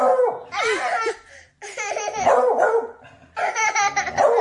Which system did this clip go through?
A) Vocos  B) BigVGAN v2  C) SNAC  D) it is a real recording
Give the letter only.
D